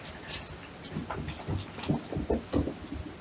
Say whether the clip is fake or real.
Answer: real